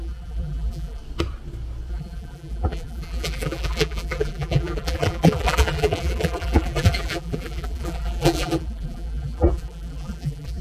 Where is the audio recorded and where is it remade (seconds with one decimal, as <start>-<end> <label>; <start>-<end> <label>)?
0.0-1.0 remade; 1.0-1.9 recorded; 1.9-10.6 remade